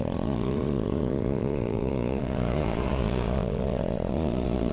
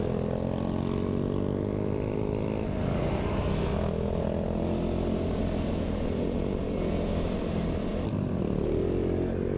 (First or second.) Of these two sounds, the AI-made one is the first